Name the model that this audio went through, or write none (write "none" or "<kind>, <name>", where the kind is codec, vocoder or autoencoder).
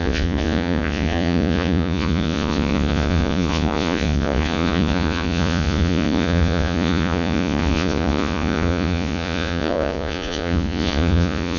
vocoder, Vocos